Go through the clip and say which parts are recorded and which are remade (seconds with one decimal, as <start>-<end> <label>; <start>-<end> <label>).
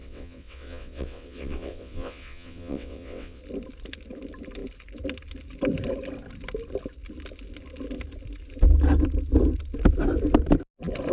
0.0-3.4 remade; 3.4-11.1 recorded